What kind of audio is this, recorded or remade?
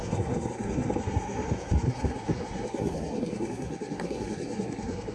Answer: remade